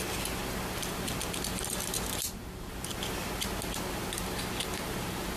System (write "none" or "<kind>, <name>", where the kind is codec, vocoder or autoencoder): none